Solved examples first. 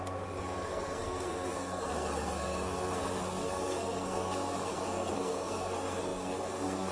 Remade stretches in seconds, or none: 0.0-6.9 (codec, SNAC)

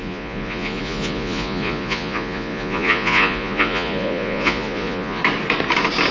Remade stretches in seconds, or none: 0.0-5.2 (vocoder, Vocos)

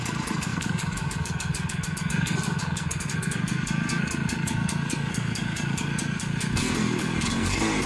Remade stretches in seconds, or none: 0.0-7.9 (codec, SNAC)

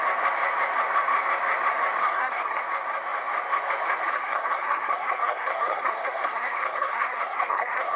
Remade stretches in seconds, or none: 2.0-2.6 (codec, SNAC); 4.1-8.0

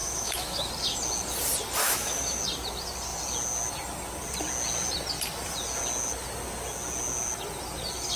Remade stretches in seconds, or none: 0.0-0.7 (autoencoder, DAC-VAE); 1.8-2.4

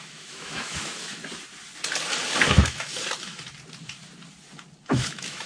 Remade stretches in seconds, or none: 0.0-1.2 (autoencoder, DAC-VAE); 2.5-2.9; 4.9-5.5

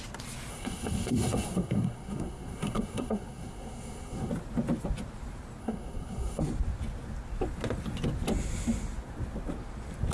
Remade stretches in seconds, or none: 0.5-4.3 (codec, SNAC); 5.6-6.4